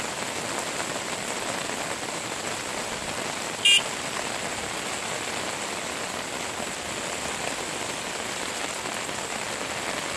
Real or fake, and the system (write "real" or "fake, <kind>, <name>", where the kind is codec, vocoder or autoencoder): real